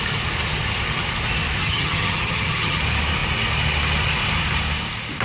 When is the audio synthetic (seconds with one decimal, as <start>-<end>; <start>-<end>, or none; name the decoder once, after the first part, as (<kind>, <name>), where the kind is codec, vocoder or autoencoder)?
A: 1.6-2.8 (vocoder, HiFi-GAN)